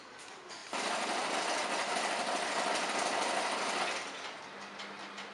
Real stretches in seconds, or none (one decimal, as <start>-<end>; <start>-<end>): 0.0-0.6; 3.8-5.3